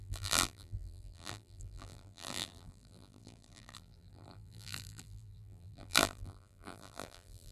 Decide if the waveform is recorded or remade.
remade